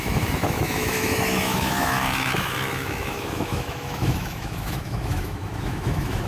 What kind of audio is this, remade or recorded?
remade